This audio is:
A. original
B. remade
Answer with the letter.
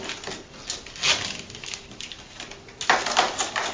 A